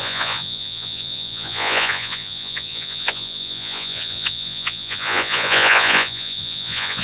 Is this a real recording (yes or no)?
no